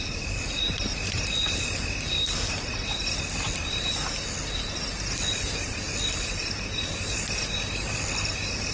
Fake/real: real